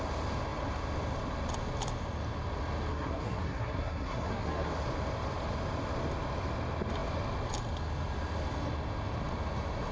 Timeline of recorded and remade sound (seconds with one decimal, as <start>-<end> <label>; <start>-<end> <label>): 0.0-2.9 recorded; 2.9-4.7 remade; 4.7-9.9 recorded